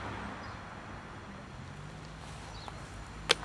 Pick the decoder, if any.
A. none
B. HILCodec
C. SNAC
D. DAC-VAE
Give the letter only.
A